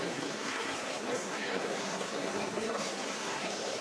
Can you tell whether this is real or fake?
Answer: fake